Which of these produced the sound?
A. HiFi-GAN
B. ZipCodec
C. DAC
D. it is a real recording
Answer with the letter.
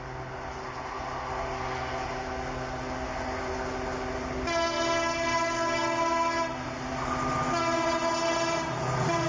D